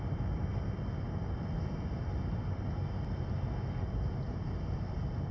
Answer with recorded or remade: recorded